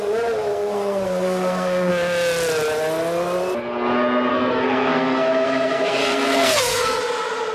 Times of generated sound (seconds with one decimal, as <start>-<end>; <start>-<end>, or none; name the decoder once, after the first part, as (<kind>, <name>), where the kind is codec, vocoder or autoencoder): 0.5-1.9 (codec, SNAC); 4.3-7.0